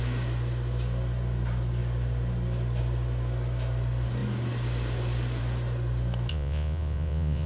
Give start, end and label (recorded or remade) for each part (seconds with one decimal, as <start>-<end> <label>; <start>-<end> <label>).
0.0-6.3 recorded; 6.3-7.5 remade